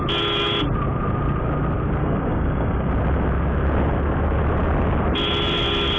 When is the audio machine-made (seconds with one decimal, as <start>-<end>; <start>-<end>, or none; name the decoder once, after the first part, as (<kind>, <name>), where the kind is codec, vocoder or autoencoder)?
2.0-2.9 (codec, DAC)